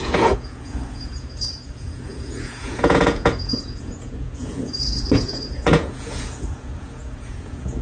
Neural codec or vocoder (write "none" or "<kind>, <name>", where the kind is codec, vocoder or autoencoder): vocoder, Vocos